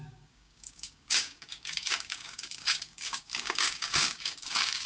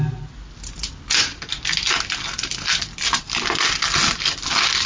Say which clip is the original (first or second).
second